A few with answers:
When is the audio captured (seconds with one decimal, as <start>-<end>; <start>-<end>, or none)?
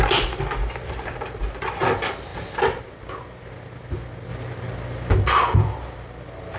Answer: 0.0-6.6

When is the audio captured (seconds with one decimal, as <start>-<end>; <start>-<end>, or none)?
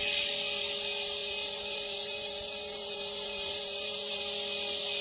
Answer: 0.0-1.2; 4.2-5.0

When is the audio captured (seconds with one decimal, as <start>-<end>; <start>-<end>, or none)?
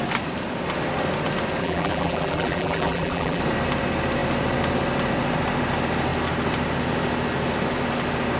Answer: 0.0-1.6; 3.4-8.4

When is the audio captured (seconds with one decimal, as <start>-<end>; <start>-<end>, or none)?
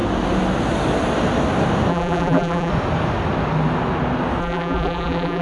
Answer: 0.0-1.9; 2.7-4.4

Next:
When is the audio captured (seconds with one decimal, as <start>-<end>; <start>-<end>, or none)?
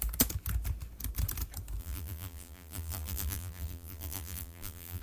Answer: 0.0-1.8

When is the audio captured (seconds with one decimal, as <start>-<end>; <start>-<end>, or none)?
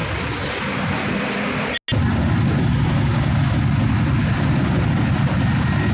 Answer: 0.0-5.9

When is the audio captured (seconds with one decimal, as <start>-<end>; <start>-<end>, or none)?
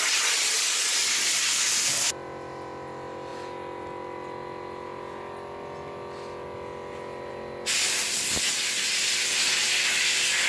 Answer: 0.0-10.5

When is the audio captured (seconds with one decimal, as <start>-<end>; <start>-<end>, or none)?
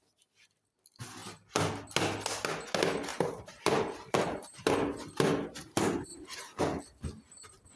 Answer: 0.0-3.1; 4.7-7.8